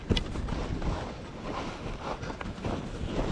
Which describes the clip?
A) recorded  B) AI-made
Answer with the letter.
A